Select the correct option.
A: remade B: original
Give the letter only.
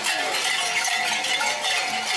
B